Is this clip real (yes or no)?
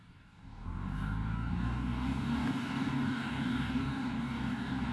no